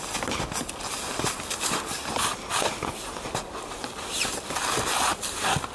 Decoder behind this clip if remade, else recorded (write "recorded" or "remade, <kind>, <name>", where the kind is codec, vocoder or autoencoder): recorded